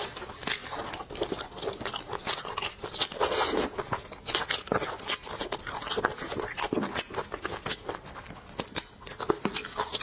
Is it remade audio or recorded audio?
recorded